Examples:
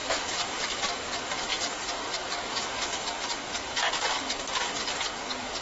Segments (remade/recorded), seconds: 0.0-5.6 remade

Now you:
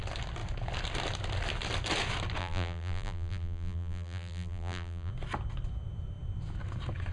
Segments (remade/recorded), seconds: 0.0-2.4 recorded; 2.4-5.1 remade; 5.1-7.1 recorded

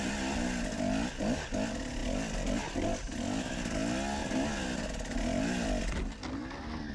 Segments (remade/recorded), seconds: 0.0-6.9 recorded

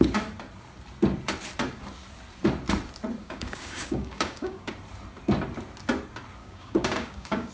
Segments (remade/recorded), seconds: 0.0-3.2 recorded; 3.2-4.7 remade; 4.7-6.4 recorded; 6.4-7.5 remade

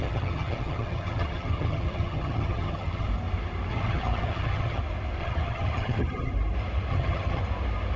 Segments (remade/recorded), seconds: 0.0-3.1 remade; 3.1-3.7 recorded; 3.7-4.8 remade; 4.8-5.2 recorded; 5.2-6.3 remade; 6.3-6.9 recorded; 6.9-7.4 remade; 7.4-8.0 recorded

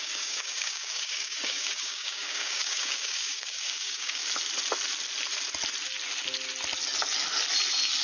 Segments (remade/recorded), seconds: 0.0-4.2 remade; 4.2-8.0 recorded

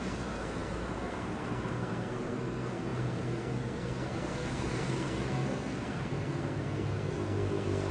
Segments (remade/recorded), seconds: 0.0-7.9 remade

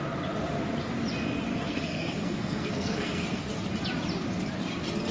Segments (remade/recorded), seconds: 0.0-1.5 recorded; 1.5-3.4 remade; 3.4-5.1 recorded